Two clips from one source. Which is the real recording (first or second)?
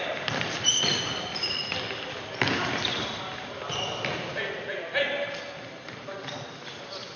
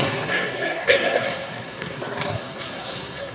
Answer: first